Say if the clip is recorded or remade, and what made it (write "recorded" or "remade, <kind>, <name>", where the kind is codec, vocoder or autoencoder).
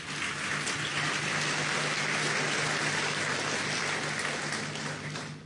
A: recorded